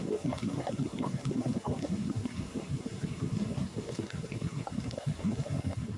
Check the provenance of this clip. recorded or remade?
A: remade